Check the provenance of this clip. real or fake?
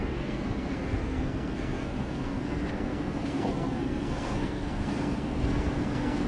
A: fake